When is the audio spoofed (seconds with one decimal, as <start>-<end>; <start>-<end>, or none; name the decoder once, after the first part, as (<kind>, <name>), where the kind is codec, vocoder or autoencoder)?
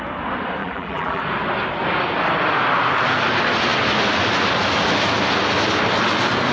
0.6-1.2 (vocoder, BigVGAN v2)